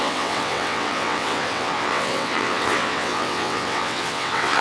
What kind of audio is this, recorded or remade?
remade